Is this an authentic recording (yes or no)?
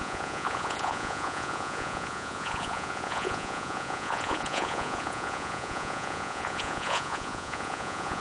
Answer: no